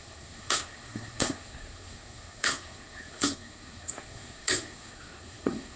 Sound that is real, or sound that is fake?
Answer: fake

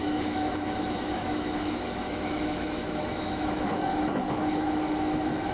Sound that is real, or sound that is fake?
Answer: fake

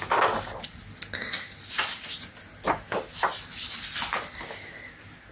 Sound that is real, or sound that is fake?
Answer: real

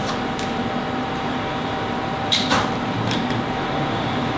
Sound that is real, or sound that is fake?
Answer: fake